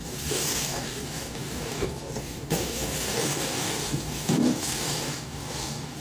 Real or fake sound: fake